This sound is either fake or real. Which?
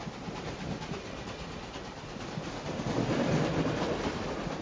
real